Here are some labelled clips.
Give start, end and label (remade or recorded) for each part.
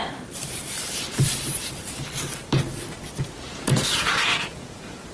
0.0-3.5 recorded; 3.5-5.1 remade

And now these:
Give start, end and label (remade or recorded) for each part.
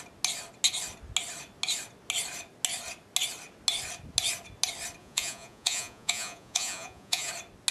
0.0-5.0 recorded; 5.0-7.3 remade; 7.3-7.7 recorded